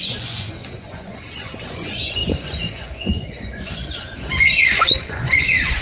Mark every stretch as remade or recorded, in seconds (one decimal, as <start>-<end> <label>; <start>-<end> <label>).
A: 0.0-5.8 remade